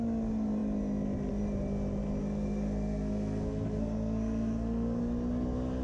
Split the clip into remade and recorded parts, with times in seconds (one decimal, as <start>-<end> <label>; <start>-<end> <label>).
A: 0.0-2.2 recorded; 2.2-5.0 remade; 5.0-5.8 recorded